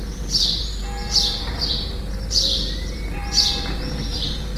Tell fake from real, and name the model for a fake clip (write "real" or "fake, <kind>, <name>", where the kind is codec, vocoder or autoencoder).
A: fake, vocoder, BigVGAN v2